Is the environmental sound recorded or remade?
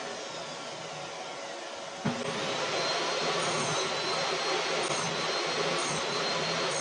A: recorded